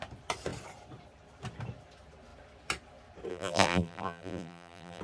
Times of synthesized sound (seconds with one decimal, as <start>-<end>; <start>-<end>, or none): 3.3-5.0